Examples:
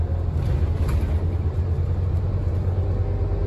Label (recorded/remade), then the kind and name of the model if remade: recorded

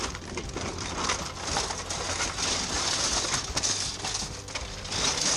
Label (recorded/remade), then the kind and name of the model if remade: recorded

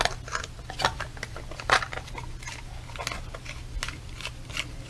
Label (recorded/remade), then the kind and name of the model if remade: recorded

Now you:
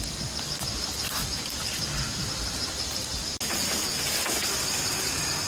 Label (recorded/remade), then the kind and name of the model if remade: recorded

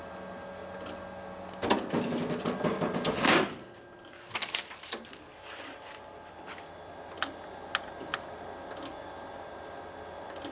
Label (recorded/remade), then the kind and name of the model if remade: recorded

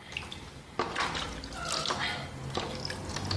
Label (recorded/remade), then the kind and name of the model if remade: recorded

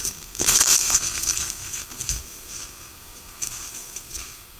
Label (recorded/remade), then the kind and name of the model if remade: remade, codec, SNAC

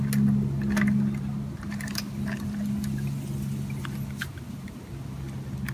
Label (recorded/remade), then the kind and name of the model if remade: recorded